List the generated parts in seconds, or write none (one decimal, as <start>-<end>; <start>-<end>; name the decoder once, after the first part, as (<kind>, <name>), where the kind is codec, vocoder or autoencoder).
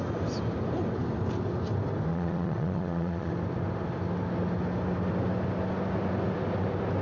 2.1-3.3 (vocoder, Vocos)